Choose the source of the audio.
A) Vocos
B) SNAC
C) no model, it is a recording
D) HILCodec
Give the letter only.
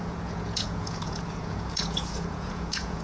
A